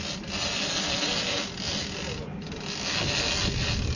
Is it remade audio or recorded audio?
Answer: recorded